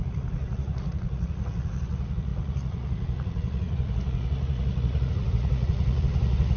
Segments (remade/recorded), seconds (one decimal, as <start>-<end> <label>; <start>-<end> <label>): 0.0-6.6 remade

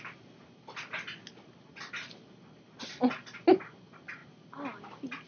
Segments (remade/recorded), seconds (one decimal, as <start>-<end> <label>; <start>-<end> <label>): 0.0-5.3 recorded

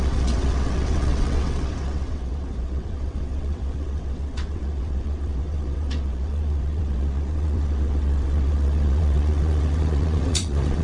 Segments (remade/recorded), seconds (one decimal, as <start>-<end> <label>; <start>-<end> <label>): 0.0-10.8 remade

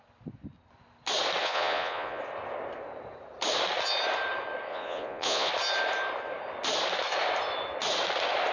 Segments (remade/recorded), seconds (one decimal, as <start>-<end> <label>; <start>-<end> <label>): 0.0-1.4 recorded; 1.4-2.2 remade; 2.2-4.7 recorded; 4.7-5.5 remade; 5.5-8.5 recorded

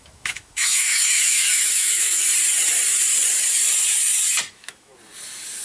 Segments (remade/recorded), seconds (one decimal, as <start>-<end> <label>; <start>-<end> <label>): 0.0-2.3 remade; 2.3-4.5 recorded; 4.5-4.9 remade; 4.9-5.6 recorded

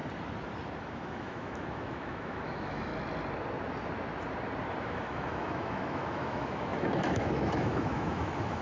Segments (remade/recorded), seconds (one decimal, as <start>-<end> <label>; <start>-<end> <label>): 0.0-0.8 recorded; 0.8-2.9 remade; 2.9-4.8 recorded; 4.8-8.6 remade